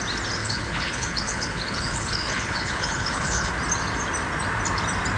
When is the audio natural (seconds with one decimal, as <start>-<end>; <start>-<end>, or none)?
0.0-0.4; 3.5-5.2